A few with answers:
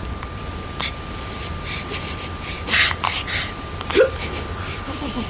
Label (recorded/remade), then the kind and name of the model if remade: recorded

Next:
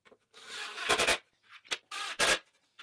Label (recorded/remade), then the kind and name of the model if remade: recorded